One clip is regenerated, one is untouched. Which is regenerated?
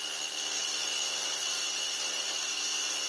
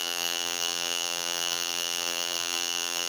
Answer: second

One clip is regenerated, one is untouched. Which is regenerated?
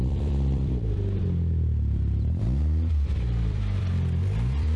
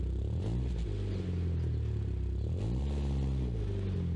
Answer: first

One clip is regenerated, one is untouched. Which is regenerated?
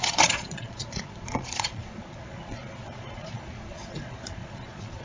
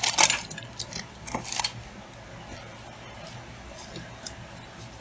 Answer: first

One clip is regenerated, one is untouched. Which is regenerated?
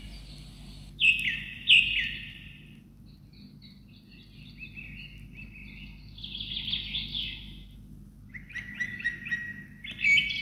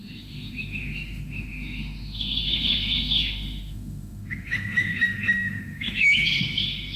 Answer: second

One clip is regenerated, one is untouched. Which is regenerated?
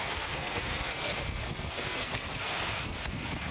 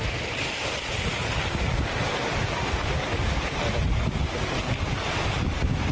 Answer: first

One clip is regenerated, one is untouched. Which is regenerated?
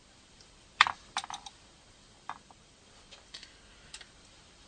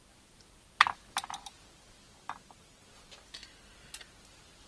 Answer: first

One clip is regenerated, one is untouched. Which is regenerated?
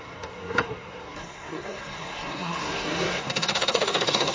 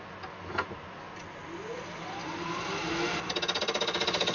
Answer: first